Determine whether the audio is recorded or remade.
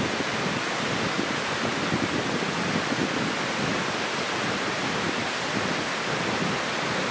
recorded